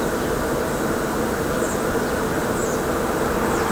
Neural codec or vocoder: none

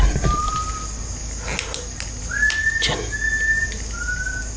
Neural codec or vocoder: none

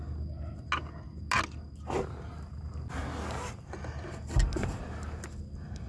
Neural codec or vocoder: none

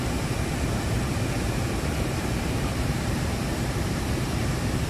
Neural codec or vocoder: vocoder, BigVGAN v2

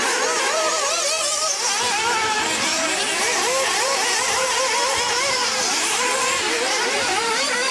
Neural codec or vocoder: vocoder, BigVGAN v2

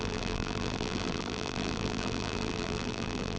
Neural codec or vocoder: vocoder, BigVGAN v2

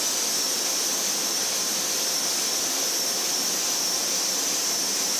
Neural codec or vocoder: vocoder, BigVGAN v2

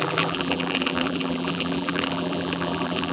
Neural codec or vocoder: vocoder, BigVGAN v2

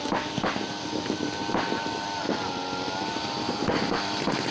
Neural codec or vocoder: vocoder, BigVGAN v2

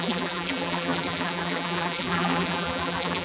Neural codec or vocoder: vocoder, BigVGAN v2